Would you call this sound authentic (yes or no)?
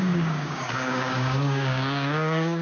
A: no